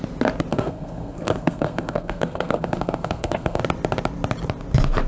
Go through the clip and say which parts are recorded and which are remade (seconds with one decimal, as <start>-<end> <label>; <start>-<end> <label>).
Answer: 0.0-0.5 recorded; 0.5-3.6 remade; 3.6-5.1 recorded

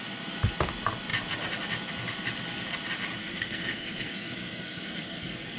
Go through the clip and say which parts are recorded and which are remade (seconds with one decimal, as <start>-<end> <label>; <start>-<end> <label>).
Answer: 0.0-3.2 recorded; 3.2-5.6 remade

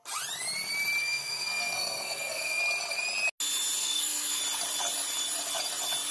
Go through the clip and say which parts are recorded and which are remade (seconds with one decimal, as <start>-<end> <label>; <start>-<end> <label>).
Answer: 0.0-1.0 recorded; 1.0-2.6 remade; 2.6-3.8 recorded; 3.8-4.4 remade; 4.4-6.1 recorded

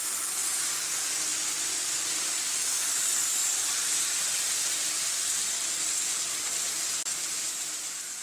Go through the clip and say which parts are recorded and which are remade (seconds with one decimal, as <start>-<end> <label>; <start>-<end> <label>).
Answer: 0.0-8.2 recorded

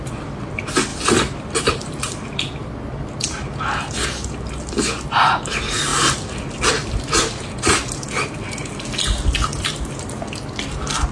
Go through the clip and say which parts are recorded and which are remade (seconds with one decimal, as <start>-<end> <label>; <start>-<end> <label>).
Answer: 0.0-11.1 recorded

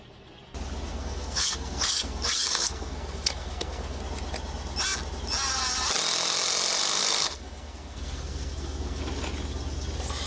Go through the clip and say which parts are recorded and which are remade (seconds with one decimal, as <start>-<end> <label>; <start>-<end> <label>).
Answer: 0.0-0.9 recorded; 0.9-4.0 remade; 4.0-7.0 recorded; 7.0-9.0 remade; 9.0-10.3 recorded

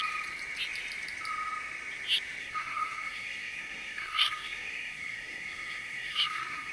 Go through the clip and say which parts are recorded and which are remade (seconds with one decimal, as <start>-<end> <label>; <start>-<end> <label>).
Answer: 0.0-2.4 recorded; 2.4-6.7 remade

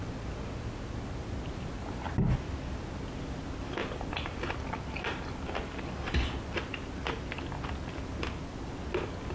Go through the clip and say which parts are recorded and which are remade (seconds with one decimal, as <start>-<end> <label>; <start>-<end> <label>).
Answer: 0.0-9.3 recorded